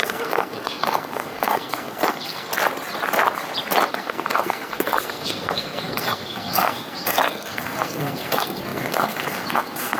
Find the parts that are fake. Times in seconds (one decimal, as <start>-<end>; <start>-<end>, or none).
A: 0.0-2.5; 3.9-10.0